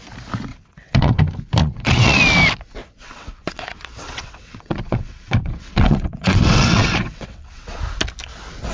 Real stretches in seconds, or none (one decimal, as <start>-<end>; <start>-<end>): 0.0-0.5; 1.2-1.6; 2.2-2.8; 7.8-8.7